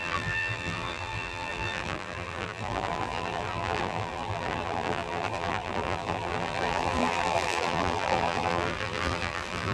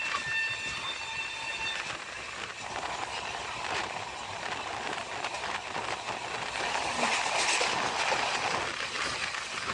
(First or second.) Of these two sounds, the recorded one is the second